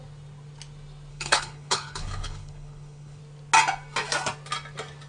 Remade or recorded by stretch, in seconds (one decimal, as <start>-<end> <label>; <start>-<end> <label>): 0.0-1.1 recorded; 1.1-3.2 remade; 3.2-5.1 recorded